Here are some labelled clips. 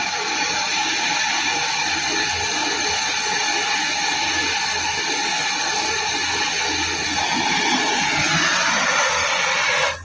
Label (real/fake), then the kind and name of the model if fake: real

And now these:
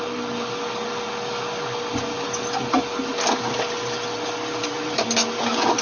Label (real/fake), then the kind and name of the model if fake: real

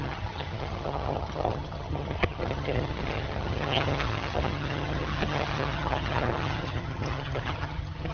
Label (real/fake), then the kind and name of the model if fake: fake, vocoder, HiFi-GAN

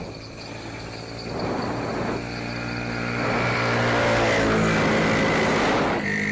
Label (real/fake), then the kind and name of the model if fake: real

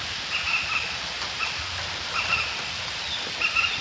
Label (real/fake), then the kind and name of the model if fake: real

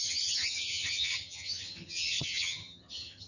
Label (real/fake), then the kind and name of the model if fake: fake, vocoder, HiFi-GAN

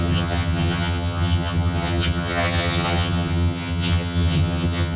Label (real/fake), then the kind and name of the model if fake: fake, vocoder, HiFi-GAN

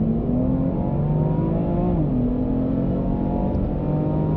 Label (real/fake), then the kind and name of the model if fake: real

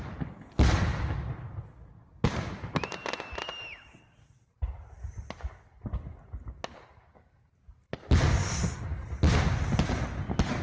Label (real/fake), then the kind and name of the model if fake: real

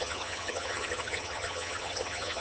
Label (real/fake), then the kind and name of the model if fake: fake, vocoder, HiFi-GAN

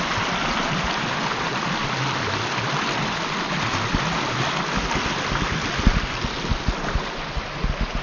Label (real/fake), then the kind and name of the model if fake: real